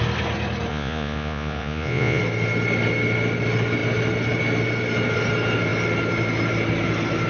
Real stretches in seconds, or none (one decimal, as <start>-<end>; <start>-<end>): 0.0-0.7; 2.2-7.3